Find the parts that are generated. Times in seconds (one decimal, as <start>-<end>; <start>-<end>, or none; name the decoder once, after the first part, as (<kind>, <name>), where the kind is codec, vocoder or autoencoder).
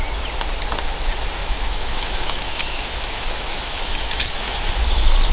1.4-4.6 (autoencoder, DAC-VAE)